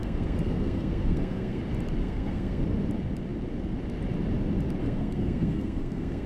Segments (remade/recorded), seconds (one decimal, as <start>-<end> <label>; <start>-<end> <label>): 0.0-1.6 remade; 1.6-2.0 recorded; 2.0-2.6 remade; 2.6-4.8 recorded; 4.8-6.3 remade